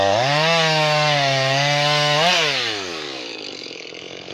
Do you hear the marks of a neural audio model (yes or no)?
yes